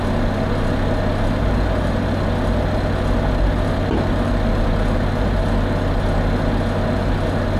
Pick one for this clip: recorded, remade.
recorded